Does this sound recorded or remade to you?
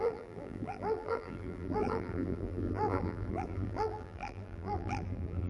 remade